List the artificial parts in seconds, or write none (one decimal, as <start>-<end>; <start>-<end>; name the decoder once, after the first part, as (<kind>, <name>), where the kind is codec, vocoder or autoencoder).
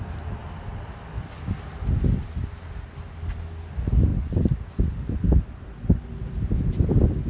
none